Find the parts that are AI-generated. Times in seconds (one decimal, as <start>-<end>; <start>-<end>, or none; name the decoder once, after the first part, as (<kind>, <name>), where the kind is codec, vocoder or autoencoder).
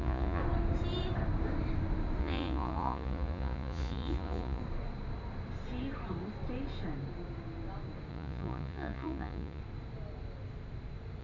0.0-0.4 (vocoder, Vocos); 2.2-4.6; 8.1-9.6